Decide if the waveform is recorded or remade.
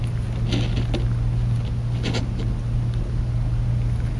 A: recorded